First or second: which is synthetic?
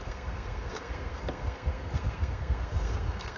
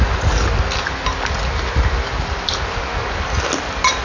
first